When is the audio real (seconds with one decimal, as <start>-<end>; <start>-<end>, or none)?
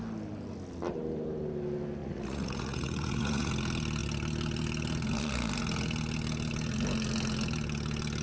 0.0-2.0; 3.5-8.2